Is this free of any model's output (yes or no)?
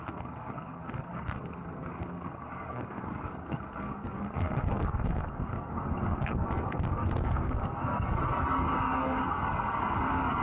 no